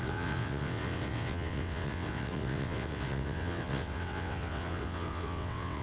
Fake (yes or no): yes